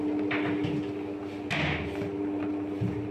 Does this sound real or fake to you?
real